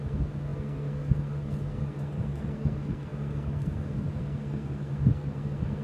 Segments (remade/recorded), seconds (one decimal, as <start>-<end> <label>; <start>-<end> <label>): 0.0-5.8 remade